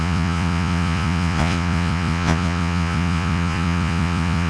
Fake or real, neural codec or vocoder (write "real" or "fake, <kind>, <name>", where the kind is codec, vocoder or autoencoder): fake, vocoder, Vocos